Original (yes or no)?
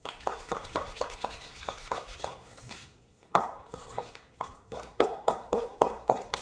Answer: no